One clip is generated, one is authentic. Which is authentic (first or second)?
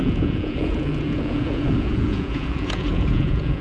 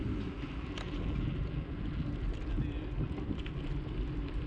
second